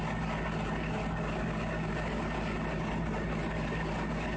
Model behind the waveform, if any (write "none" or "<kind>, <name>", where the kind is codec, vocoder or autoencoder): none